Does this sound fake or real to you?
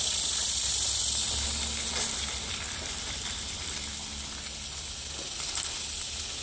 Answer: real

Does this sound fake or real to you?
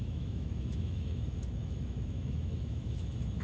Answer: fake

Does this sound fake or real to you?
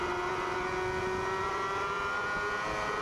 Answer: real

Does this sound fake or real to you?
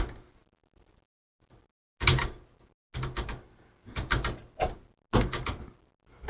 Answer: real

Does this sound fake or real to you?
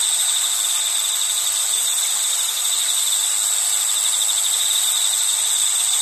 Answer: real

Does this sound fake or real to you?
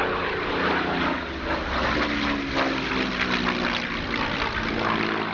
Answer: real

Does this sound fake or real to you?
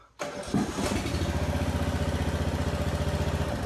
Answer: real